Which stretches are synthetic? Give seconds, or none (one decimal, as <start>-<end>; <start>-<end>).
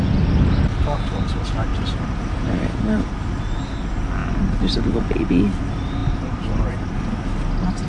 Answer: 1.7-3.1; 6.0-6.9